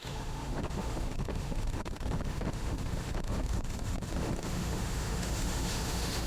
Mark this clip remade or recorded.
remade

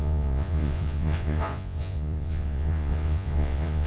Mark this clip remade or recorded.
remade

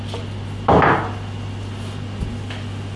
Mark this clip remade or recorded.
recorded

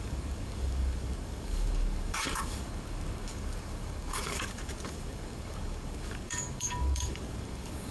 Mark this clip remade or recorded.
remade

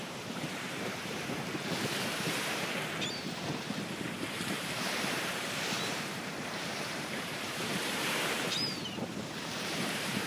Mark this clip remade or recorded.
remade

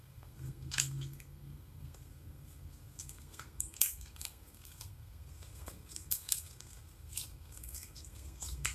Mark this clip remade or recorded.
remade